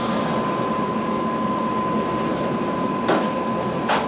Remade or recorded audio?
remade